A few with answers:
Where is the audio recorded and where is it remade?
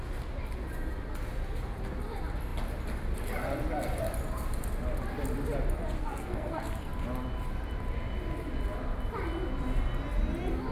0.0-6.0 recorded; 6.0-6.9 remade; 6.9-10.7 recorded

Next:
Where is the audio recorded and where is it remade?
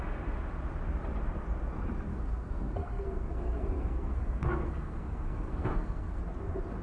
0.0-2.1 recorded; 2.1-6.2 remade; 6.2-6.8 recorded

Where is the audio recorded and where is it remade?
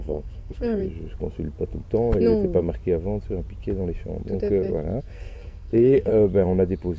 0.0-0.8 remade; 0.8-5.0 recorded; 5.0-6.1 remade; 6.1-7.0 recorded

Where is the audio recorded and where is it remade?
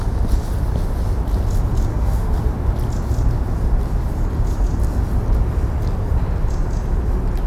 0.0-1.9 recorded; 1.9-2.4 remade; 2.4-7.5 recorded